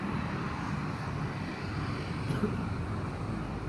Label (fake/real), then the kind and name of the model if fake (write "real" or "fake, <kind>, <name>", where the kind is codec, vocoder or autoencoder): real